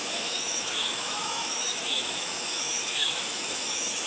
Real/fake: fake